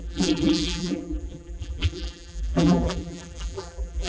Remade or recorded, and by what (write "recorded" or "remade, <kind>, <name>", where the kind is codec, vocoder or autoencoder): remade, vocoder, BigVGAN v2